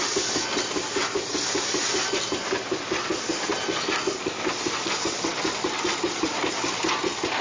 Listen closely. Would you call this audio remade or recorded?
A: recorded